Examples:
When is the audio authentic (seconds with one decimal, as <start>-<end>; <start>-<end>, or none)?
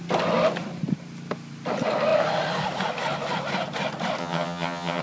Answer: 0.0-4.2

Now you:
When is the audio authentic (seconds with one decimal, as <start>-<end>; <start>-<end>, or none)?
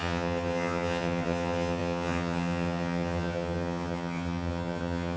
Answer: none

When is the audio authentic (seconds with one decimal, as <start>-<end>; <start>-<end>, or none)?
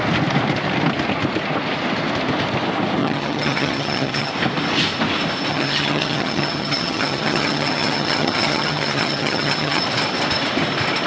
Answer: 0.0-3.0; 4.3-5.5; 9.8-11.1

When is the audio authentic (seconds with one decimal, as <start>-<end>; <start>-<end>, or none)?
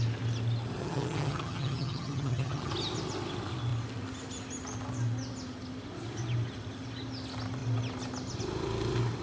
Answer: 0.0-0.8; 2.7-9.2